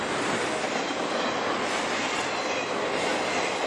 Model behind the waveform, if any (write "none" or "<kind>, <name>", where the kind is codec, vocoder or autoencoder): none